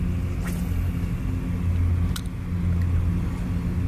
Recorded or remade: recorded